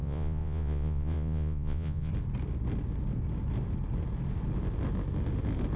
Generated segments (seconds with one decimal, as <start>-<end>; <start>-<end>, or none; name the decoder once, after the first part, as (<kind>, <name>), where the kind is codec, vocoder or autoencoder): 0.0-2.1 (vocoder, Vocos)